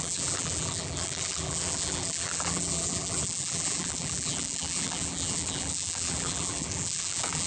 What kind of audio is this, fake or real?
fake